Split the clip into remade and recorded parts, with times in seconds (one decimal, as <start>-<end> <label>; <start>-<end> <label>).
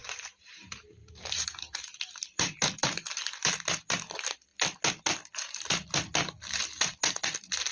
0.0-3.3 remade; 3.3-7.7 recorded